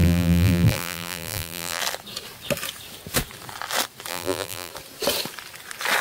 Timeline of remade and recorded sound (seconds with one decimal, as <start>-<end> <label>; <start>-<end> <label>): 0.0-1.8 remade; 1.8-4.1 recorded; 4.1-4.7 remade; 4.7-6.0 recorded